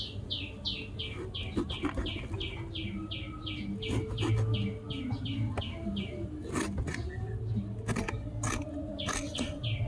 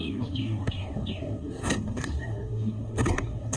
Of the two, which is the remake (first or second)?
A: second